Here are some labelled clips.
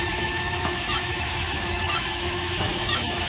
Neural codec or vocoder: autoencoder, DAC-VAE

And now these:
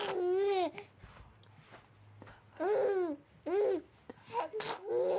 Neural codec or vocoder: none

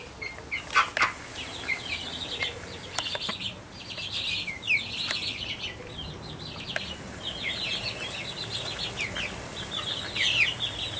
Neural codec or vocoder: none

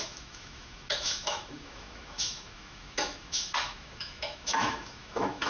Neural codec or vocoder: autoencoder, DAC-VAE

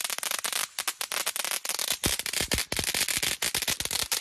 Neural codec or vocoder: none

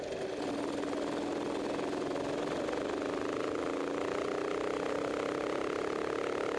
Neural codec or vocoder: none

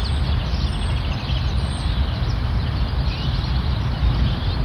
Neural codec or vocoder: none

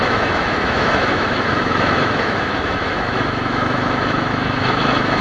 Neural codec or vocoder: autoencoder, DAC-VAE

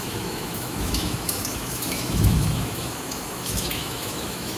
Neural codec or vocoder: autoencoder, DAC-VAE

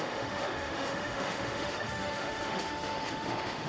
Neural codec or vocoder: autoencoder, DAC-VAE